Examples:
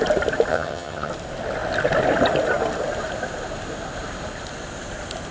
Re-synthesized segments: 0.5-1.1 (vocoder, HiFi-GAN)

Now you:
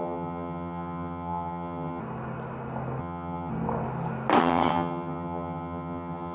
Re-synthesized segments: 0.0-2.0 (vocoder, HiFi-GAN); 3.0-3.5; 4.4-6.3

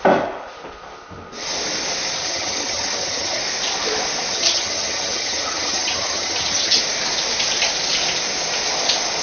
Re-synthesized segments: 2.2-3.4 (vocoder, HiFi-GAN); 4.3-6.8

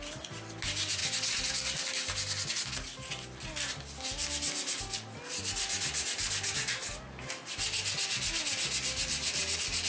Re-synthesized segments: none

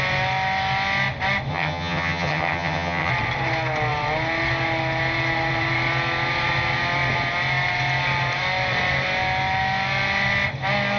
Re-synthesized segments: 1.5-3.1 (vocoder, HiFi-GAN)

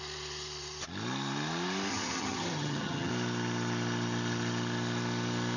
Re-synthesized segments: 1.9-3.1 (vocoder, HiFi-GAN)